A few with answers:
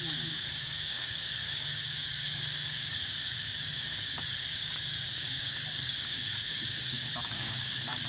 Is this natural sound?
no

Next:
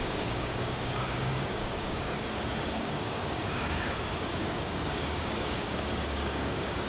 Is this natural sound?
no